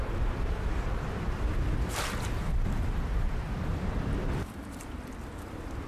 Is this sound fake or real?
fake